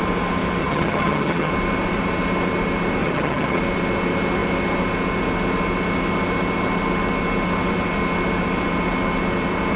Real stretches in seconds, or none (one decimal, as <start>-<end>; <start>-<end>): 0.0-0.6; 1.5-3.0; 3.6-9.8